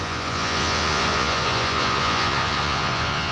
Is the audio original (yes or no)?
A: no